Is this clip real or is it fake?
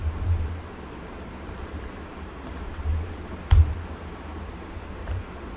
fake